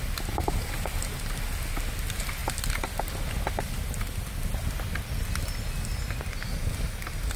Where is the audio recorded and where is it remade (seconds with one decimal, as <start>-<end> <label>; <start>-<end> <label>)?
0.0-7.4 recorded